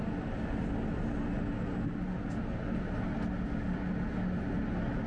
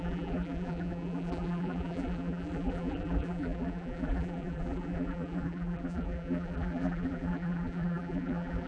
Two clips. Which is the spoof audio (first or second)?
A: second